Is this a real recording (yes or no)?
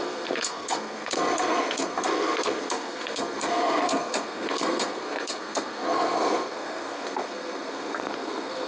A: no